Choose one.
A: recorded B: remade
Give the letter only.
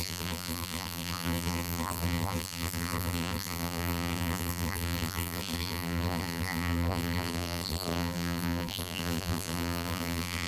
B